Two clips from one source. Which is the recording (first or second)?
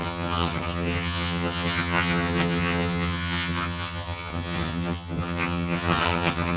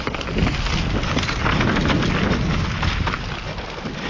second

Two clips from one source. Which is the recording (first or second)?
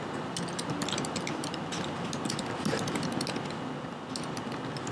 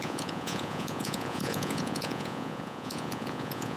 first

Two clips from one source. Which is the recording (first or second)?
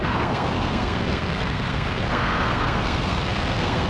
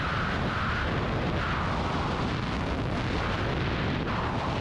second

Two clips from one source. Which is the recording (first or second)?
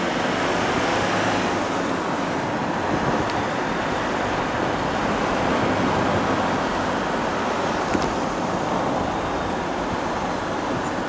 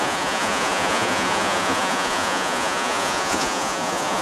first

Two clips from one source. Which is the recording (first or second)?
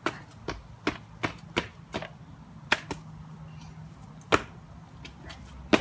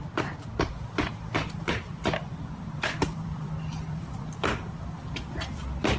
first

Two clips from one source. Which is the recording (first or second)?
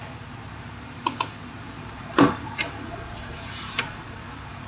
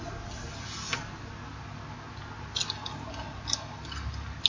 second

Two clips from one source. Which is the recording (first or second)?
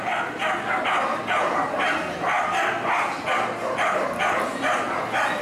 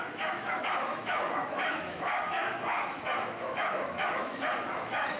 first